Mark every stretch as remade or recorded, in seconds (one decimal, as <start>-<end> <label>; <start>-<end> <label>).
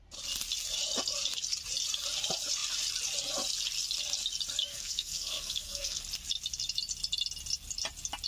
0.0-4.7 recorded; 4.7-6.0 remade; 6.0-8.3 recorded